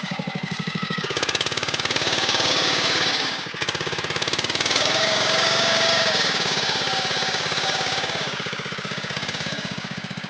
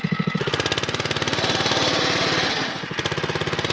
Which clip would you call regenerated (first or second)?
first